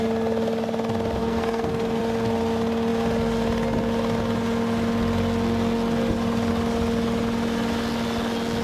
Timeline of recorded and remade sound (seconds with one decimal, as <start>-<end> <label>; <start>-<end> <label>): 0.0-1.2 recorded; 1.2-2.0 remade; 2.0-8.6 recorded